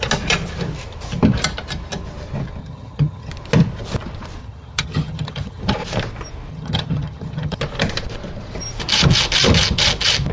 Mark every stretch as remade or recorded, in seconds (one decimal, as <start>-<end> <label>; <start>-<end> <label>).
0.0-2.6 recorded; 2.6-3.3 remade; 3.3-4.4 recorded; 4.4-5.6 remade; 5.6-6.5 recorded; 6.5-7.6 remade; 7.6-10.3 recorded